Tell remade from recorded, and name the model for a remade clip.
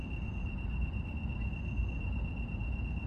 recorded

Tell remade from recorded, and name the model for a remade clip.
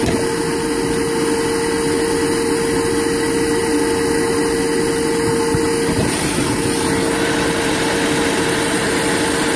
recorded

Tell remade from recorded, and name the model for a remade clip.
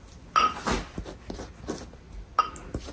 recorded